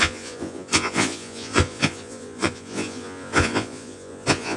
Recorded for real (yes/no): no